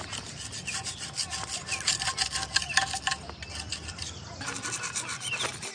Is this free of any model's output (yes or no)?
yes